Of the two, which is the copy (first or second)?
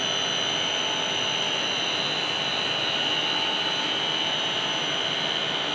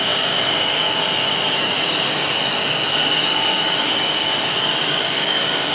second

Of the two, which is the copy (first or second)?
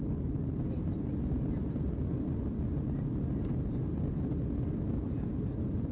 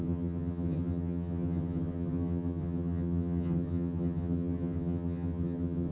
second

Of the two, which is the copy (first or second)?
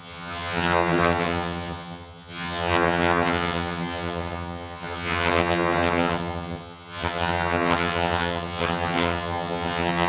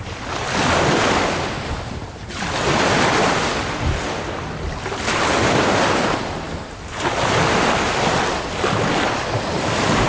first